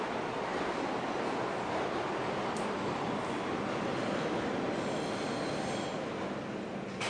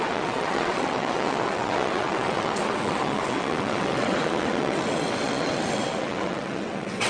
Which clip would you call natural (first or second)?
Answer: first